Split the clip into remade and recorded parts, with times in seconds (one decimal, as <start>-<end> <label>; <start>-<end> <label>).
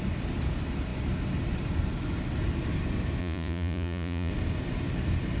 0.0-3.2 recorded; 3.2-4.3 remade; 4.3-5.4 recorded